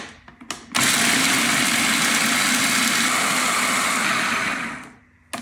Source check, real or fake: real